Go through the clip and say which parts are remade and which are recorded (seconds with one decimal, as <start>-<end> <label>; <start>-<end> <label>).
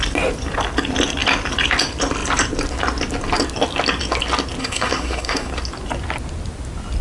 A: 0.0-4.6 recorded; 4.6-5.5 remade; 5.5-7.0 recorded